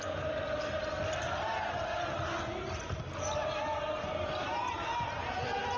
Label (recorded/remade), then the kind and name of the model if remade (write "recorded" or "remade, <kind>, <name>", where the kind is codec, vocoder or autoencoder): recorded